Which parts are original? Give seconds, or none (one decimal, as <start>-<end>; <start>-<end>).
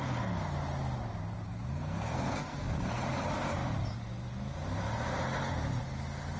0.0-1.8; 3.0-6.4